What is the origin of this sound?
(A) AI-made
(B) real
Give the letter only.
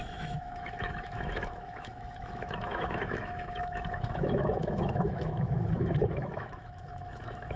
A